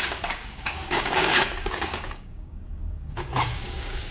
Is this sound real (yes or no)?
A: no